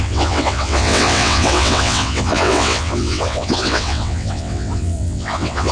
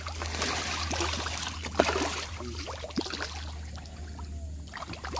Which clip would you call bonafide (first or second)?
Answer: second